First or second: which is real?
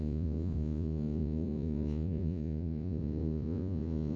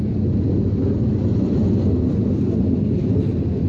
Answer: second